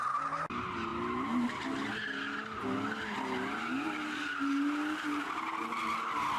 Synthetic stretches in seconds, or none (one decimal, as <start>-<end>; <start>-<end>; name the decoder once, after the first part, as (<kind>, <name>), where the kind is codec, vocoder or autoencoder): none